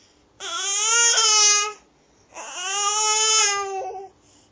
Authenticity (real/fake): real